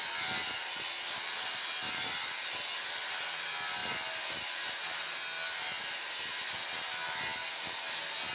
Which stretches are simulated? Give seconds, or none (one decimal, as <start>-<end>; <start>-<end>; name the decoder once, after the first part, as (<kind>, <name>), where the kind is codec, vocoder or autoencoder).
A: none